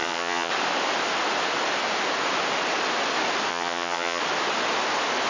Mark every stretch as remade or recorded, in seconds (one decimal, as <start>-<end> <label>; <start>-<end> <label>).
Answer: 0.0-0.5 remade; 0.5-3.5 recorded; 3.5-4.2 remade; 4.2-5.3 recorded